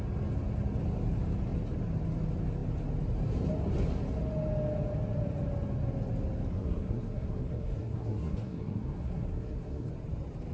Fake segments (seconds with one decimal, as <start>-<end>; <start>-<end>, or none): 6.5-9.9